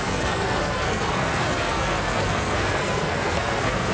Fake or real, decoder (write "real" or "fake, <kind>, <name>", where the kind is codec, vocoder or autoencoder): fake, codec, SNAC